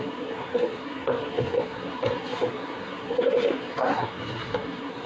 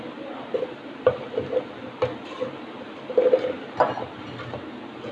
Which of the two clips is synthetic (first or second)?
first